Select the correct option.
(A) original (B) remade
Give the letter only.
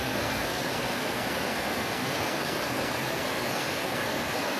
B